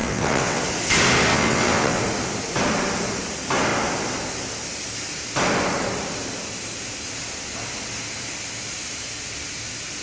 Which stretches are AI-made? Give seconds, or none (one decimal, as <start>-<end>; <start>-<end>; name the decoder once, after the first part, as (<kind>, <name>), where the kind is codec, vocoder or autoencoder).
0.0-0.6 (vocoder, WaveNeXt); 1.3-2.0